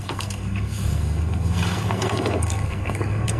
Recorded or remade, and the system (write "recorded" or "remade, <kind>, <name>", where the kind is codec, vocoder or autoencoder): remade, codec, SNAC